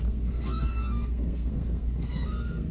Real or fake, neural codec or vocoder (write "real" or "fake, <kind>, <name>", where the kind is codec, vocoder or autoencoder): fake, codec, SNAC